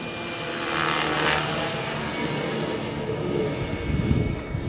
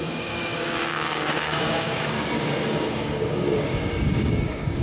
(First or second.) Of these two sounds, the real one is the first